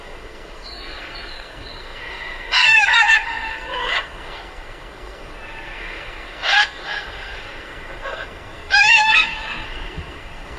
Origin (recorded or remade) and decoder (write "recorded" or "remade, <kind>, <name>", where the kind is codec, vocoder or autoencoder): remade, codec, SNAC